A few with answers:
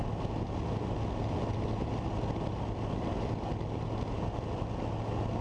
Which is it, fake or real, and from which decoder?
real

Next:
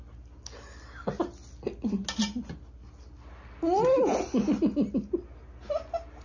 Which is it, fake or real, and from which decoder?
real